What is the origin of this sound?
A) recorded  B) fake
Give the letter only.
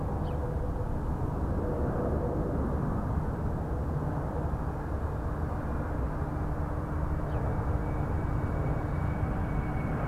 A